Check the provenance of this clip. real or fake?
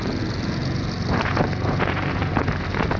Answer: fake